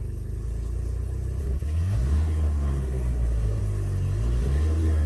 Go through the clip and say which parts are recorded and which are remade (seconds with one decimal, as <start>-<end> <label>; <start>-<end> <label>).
0.0-1.4 recorded; 1.4-3.6 remade; 3.6-4.4 recorded; 4.4-5.1 remade